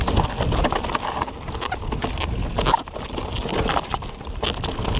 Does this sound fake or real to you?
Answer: real